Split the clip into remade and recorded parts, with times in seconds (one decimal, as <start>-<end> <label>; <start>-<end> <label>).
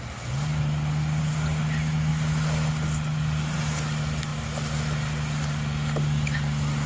0.0-6.9 recorded